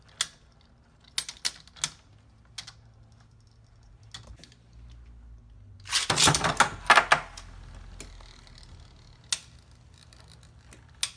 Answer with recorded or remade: recorded